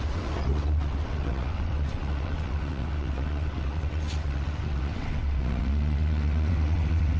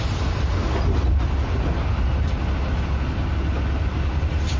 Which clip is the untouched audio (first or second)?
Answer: second